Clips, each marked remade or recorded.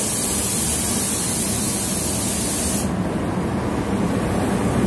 recorded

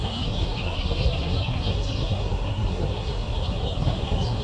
remade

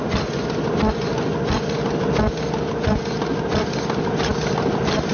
recorded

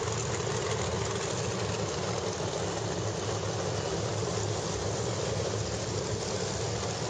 recorded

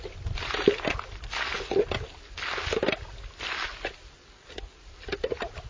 recorded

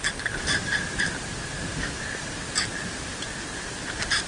recorded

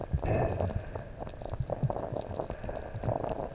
recorded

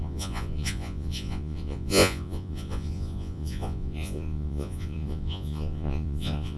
remade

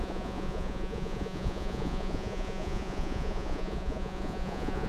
remade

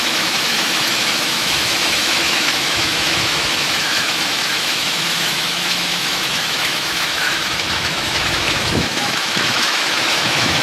remade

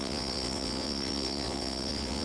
remade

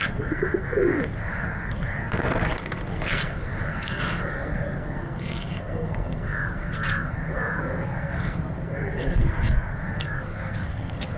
remade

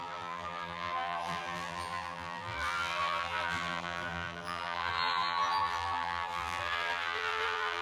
remade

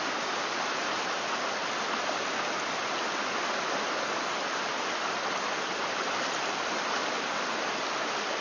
recorded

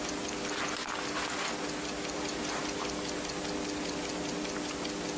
recorded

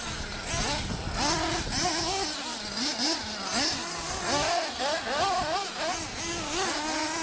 recorded